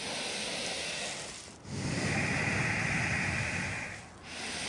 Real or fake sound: real